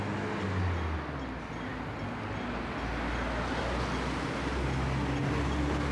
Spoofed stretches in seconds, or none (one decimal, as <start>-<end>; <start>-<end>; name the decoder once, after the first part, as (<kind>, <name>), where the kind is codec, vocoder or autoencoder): none